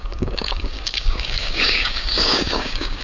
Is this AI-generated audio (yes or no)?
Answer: yes